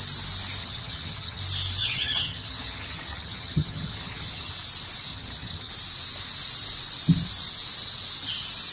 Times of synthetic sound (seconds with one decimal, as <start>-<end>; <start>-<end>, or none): 0.6-1.4; 1.8-4.5; 5.1-5.7